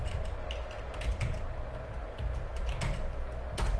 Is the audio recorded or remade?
recorded